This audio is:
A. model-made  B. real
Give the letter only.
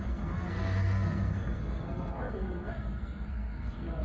A